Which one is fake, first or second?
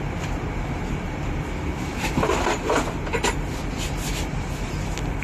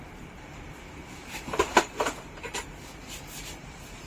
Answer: second